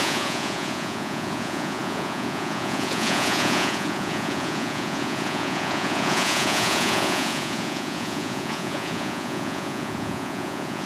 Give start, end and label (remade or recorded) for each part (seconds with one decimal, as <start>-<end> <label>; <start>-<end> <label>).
0.0-10.9 remade